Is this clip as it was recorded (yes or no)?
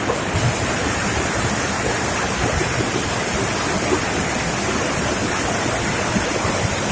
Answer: yes